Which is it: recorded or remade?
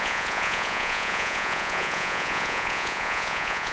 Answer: remade